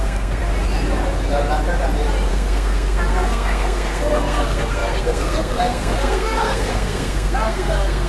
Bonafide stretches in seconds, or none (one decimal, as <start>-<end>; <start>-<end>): 0.4-2.3